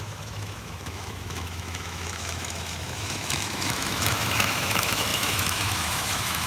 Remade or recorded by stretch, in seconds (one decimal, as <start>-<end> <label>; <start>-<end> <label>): 0.0-6.5 remade